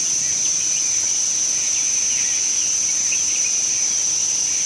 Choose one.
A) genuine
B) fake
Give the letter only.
A